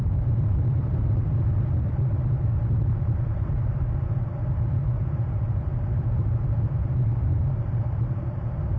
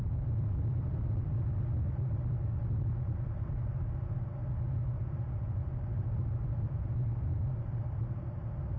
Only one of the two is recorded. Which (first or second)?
second